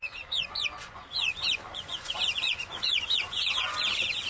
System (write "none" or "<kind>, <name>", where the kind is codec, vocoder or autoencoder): vocoder, Vocos